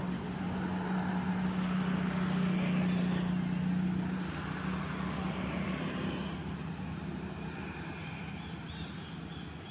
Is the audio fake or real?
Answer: real